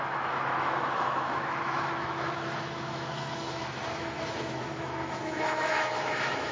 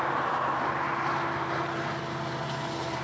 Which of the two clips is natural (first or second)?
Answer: second